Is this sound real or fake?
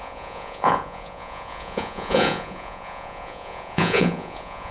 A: fake